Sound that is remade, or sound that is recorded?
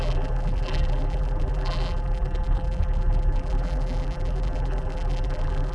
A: remade